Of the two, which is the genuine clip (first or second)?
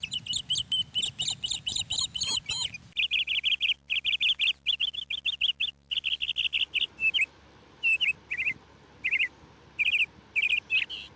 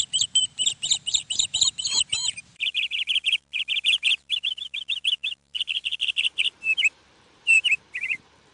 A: first